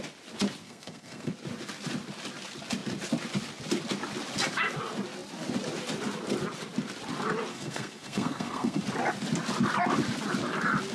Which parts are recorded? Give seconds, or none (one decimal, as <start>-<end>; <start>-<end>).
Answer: 0.0-0.6; 1.3-7.5; 8.8-10.9